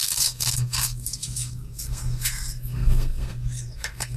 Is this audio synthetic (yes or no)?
yes